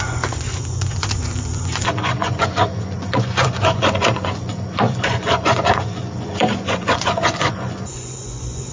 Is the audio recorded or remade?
remade